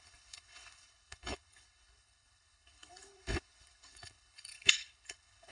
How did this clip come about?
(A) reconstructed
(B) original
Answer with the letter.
A